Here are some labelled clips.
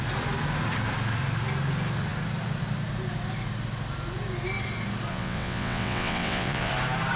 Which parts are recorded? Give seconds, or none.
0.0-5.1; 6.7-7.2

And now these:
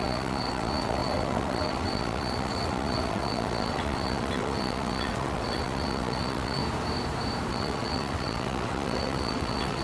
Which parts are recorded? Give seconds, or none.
6.6-7.5